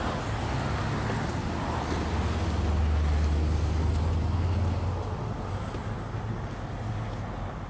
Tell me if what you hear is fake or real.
real